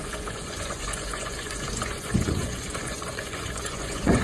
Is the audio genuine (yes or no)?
no